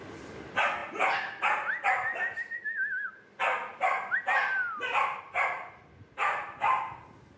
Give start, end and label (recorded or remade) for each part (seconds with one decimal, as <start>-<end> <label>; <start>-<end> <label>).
0.0-7.4 recorded